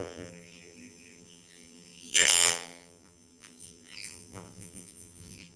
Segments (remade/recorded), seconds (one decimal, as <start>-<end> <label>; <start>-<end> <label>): 0.0-5.6 remade